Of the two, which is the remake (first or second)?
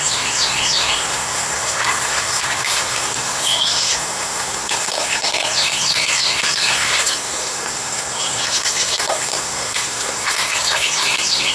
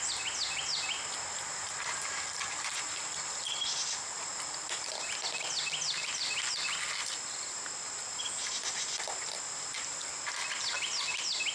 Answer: first